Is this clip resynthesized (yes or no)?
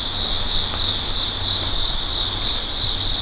no